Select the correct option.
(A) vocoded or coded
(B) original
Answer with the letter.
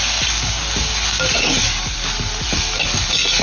B